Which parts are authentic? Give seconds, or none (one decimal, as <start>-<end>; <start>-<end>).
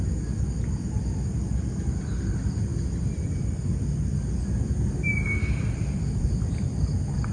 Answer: 0.0-7.3